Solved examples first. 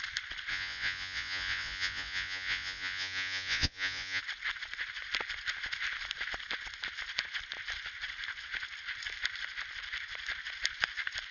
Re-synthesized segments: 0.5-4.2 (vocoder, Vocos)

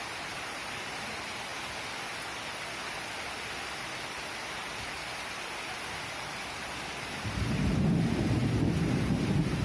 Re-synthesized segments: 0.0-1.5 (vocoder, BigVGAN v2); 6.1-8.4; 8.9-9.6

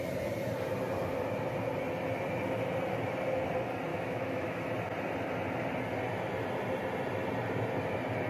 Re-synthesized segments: 3.9-4.6 (autoencoder, DAC-VAE)

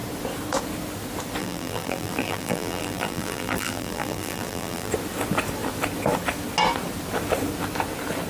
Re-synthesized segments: 1.4-4.9 (vocoder, BigVGAN v2)

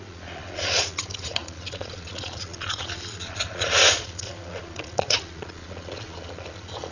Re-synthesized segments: 0.0-6.9 (vocoder, Vocos)

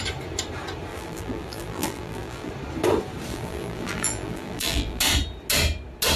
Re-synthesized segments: 0.9-2.5 (vocoder, BigVGAN v2); 3.3-5.0